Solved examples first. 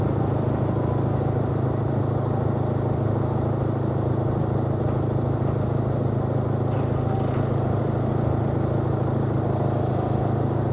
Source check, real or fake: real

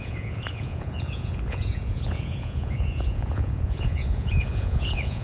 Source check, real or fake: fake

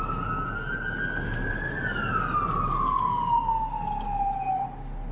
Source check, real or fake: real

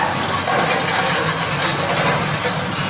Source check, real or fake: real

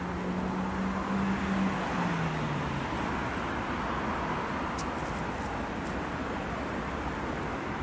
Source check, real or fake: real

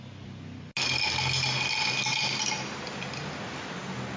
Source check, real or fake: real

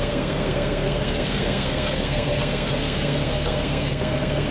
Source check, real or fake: fake